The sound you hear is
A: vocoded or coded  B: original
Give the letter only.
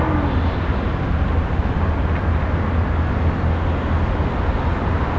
B